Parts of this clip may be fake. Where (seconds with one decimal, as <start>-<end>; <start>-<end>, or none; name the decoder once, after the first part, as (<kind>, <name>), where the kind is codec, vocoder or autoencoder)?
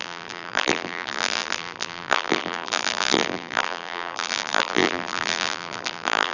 0.0-6.3 (vocoder, BigVGAN v2)